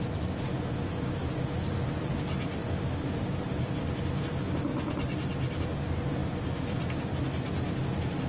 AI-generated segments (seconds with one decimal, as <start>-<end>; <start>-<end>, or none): 2.6-4.3; 4.7-5.7; 6.2-7.2